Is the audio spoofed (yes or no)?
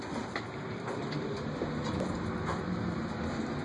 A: no